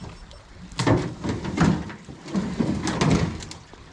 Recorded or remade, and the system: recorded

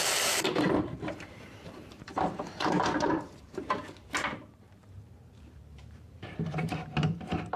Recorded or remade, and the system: remade, vocoder, BigVGAN v2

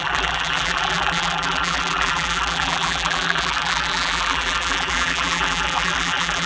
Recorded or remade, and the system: remade, vocoder, BigVGAN v2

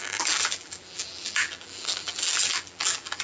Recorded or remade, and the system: remade, vocoder, BigVGAN v2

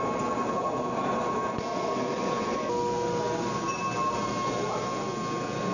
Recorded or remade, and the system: recorded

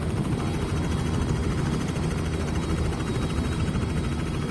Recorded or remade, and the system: remade, vocoder, BigVGAN v2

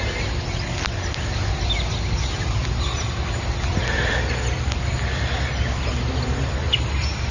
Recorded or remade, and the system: recorded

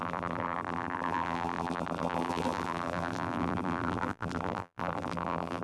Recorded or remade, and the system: remade, vocoder, BigVGAN v2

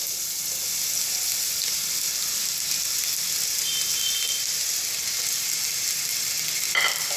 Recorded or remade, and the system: recorded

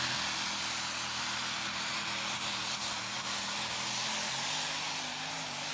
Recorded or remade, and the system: recorded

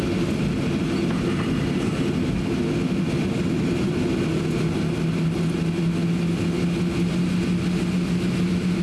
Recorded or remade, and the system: recorded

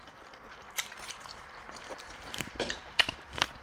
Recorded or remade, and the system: remade, vocoder, BigVGAN v2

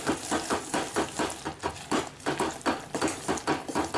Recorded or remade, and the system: recorded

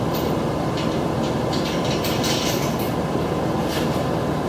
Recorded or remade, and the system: remade, vocoder, BigVGAN v2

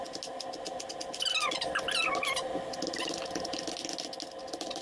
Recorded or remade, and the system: recorded